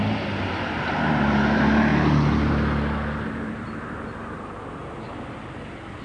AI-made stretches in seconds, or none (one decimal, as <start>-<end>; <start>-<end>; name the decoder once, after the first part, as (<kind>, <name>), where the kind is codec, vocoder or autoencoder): 1.9-2.5 (vocoder, BigVGAN v2)